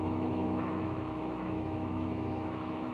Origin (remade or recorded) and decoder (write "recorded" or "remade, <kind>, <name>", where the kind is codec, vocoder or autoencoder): remade, autoencoder, DAC-VAE